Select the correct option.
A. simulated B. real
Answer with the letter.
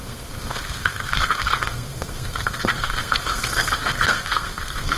A